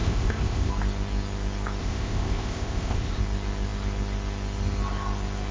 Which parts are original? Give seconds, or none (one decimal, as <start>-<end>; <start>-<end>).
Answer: 0.7-1.8; 3.2-5.5